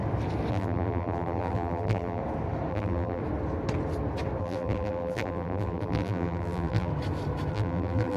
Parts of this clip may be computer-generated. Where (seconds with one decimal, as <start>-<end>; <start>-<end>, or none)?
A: 0.5-2.2; 2.7-3.2; 4.4-6.9; 7.5-8.2